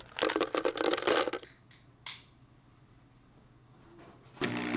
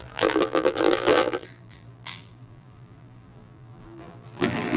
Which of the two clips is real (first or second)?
first